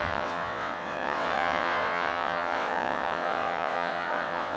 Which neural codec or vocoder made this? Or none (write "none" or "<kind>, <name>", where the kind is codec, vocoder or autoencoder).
vocoder, WaveNeXt